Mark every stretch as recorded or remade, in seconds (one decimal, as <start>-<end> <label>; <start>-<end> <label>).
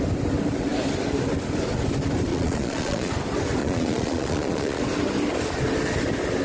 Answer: 0.0-2.3 recorded; 2.3-3.1 remade; 3.1-3.6 recorded; 3.6-4.8 remade; 4.8-6.4 recorded